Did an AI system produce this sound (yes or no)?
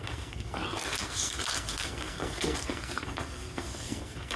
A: yes